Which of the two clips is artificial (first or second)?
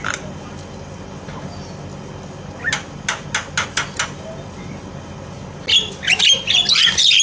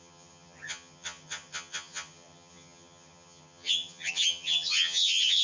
second